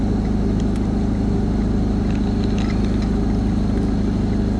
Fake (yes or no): no